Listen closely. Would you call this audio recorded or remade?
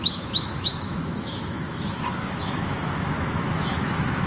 remade